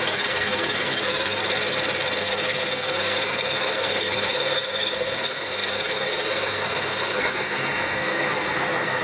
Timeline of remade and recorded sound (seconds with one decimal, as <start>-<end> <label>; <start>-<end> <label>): 0.0-1.4 remade; 1.4-2.2 recorded; 2.2-9.0 remade